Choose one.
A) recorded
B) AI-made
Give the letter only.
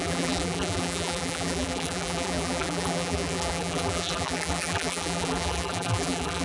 B